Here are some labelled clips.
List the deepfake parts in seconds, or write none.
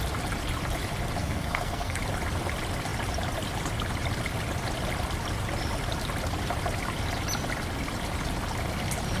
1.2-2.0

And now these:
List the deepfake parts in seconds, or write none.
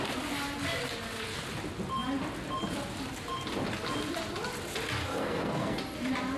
5.0-5.8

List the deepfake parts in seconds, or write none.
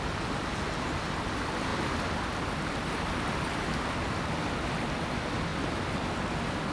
none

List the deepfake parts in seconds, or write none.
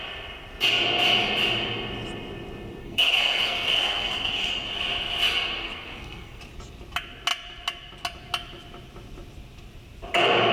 2.8-4.5; 5.6-6.4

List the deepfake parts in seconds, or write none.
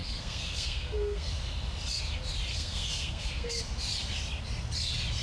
0.0-1.3; 2.5-3.6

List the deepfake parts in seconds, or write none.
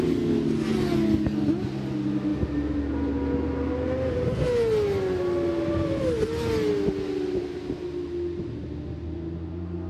none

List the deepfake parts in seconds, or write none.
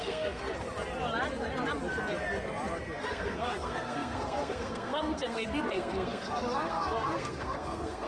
0.0-0.4; 3.0-8.1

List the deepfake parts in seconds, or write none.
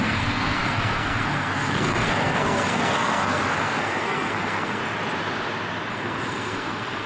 0.0-4.8; 5.9-7.1